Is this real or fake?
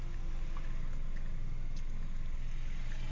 real